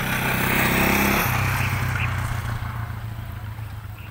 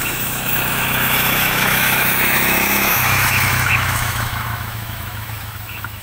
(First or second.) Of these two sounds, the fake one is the second